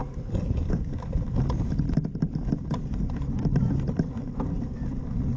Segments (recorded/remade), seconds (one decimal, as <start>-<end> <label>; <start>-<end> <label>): 0.0-3.5 recorded; 3.5-5.0 remade; 5.0-5.4 recorded